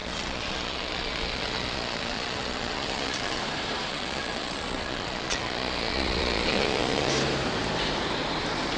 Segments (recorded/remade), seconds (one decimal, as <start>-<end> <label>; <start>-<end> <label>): 0.0-3.4 remade; 3.4-3.9 recorded; 3.9-7.1 remade; 7.1-8.8 recorded